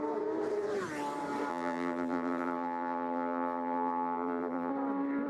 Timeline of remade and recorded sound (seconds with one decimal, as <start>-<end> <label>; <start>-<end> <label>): 0.0-1.5 recorded; 1.5-4.7 remade; 4.7-5.3 recorded